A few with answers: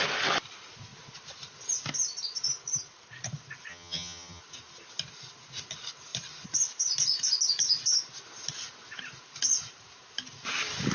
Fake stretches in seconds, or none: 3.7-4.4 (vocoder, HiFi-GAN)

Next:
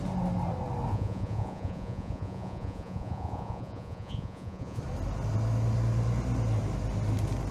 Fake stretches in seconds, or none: 0.9-4.8 (vocoder, Vocos)

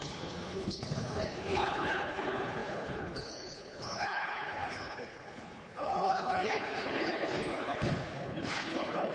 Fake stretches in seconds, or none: 0.0-9.1 (codec, HILCodec)

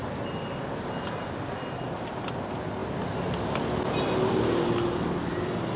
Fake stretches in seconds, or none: none

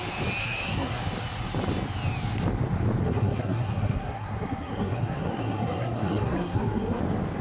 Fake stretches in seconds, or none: 0.4-1.0 (codec, SNAC); 3.0-7.0

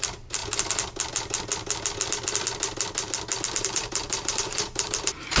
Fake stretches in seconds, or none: 0.0-0.4 (vocoder, BigVGAN v2); 3.6-5.4

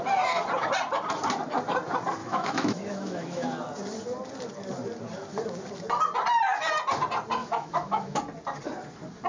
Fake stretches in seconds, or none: 2.2-3.6 (autoencoder, DAC-VAE); 7.4-8.2

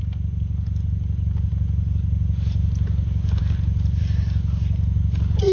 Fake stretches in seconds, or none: none